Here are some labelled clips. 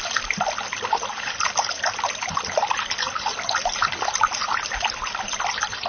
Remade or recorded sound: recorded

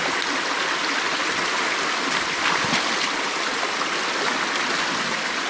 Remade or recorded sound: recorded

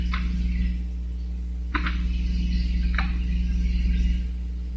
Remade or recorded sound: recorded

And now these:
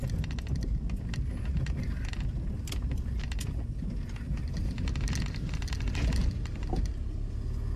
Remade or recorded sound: recorded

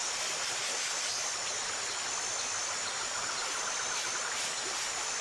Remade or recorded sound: recorded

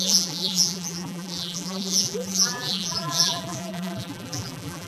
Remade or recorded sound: remade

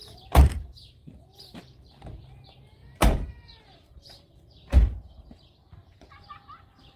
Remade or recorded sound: remade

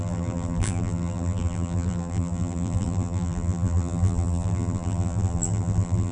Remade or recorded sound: remade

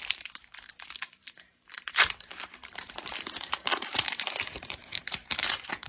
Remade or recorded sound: remade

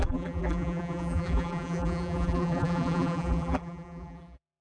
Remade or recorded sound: remade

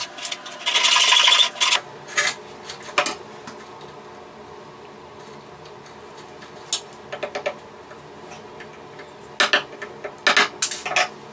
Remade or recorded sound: recorded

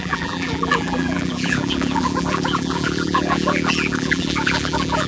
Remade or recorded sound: remade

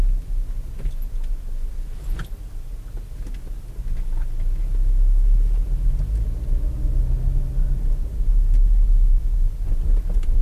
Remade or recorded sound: recorded